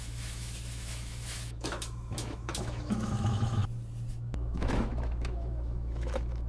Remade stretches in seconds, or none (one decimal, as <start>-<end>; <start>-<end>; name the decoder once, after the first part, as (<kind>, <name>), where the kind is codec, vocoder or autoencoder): 0.0-3.6 (autoencoder, DAC-VAE); 4.1-6.5